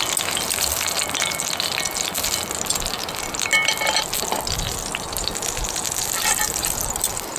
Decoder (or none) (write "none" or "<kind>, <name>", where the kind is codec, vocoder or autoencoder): none